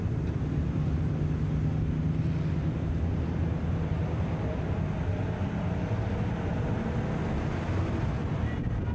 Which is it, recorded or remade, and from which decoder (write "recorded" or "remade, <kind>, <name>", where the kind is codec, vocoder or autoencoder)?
recorded